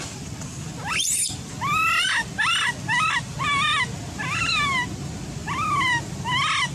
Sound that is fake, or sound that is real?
real